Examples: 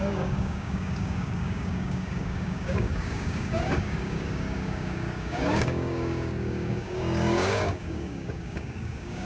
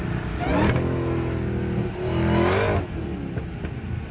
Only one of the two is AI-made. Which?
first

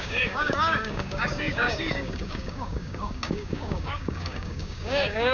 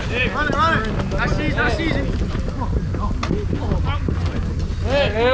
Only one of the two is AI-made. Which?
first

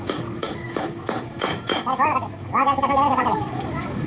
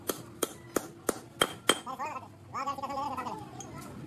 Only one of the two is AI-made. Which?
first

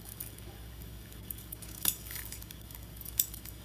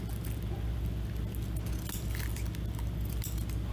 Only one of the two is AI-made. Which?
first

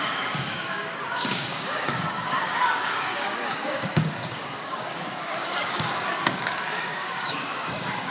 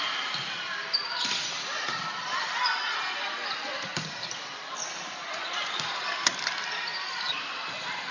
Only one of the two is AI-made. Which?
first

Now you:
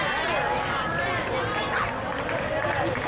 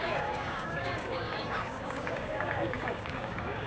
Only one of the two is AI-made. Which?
second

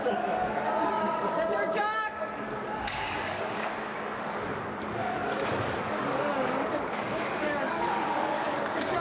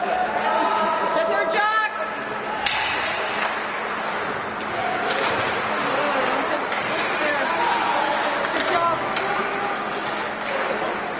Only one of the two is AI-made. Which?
first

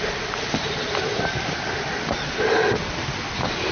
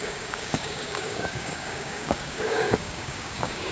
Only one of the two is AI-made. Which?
second